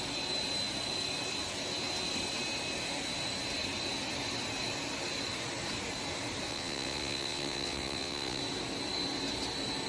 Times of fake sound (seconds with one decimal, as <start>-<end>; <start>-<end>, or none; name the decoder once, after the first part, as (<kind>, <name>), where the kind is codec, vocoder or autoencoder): 6.5-8.4 (vocoder, WaveNeXt)